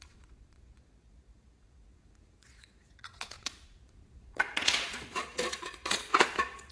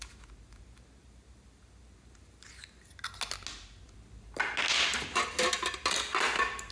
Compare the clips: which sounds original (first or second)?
second